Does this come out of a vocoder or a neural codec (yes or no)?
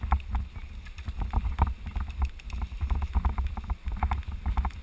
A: no